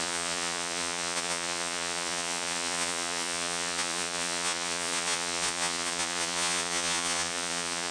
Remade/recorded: remade